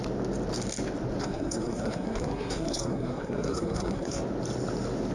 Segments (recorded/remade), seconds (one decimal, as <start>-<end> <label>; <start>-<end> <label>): 0.0-1.2 recorded; 1.2-4.2 remade; 4.2-5.1 recorded

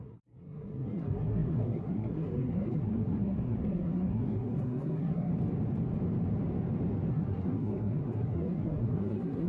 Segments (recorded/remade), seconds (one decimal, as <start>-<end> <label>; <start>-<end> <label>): 0.0-5.3 remade; 5.3-7.1 recorded; 7.1-9.5 remade

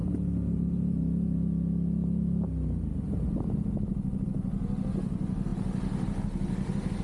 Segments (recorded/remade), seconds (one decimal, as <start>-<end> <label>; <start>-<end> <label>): 0.0-7.0 recorded

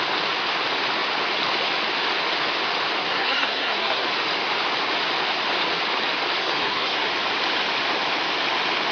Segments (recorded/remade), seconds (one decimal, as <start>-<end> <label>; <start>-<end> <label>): 0.0-3.0 recorded; 3.0-4.1 remade; 4.1-6.4 recorded; 6.4-7.1 remade; 7.1-8.9 recorded